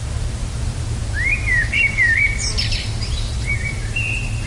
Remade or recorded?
remade